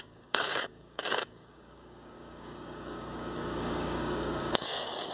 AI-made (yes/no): yes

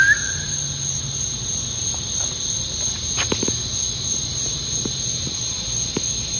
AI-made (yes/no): no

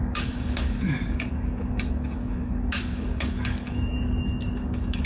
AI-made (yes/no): yes